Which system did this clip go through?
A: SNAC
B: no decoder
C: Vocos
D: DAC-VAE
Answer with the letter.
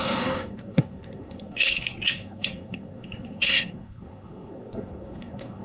A